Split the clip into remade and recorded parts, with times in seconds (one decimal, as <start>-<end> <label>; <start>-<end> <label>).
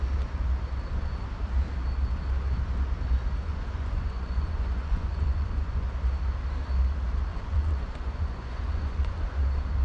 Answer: 0.0-3.5 recorded; 3.5-5.9 remade; 5.9-7.3 recorded; 7.3-9.4 remade; 9.4-9.8 recorded